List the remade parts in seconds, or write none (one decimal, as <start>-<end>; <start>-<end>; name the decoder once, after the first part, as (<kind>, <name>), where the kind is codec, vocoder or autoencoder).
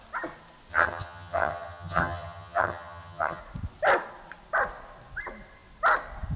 0.7-3.4 (vocoder, HiFi-GAN)